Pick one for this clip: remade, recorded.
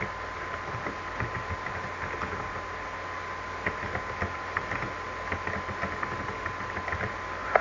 recorded